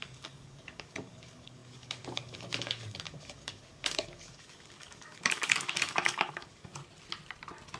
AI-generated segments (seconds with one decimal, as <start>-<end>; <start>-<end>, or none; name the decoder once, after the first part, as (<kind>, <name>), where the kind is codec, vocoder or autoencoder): 0.0-6.8 (codec, DAC)

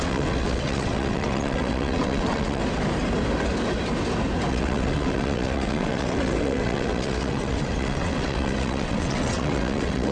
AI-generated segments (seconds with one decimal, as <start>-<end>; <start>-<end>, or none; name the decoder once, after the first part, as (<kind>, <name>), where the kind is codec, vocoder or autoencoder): 0.0-2.6 (vocoder, WaveNeXt); 4.5-10.1

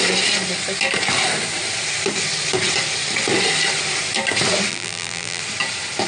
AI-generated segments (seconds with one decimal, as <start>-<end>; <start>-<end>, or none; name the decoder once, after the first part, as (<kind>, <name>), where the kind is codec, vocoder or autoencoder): 4.7-5.4 (vocoder, BigVGAN v2)

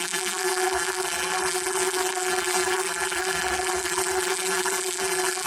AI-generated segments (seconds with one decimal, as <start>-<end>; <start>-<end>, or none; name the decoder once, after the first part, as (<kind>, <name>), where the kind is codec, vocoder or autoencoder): 0.0-5.5 (vocoder, BigVGAN v2)